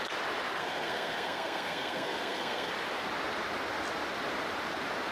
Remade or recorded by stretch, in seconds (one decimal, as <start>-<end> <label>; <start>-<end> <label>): 0.0-0.6 recorded; 0.6-2.7 remade; 2.7-5.1 recorded